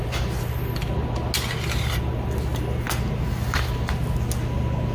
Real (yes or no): yes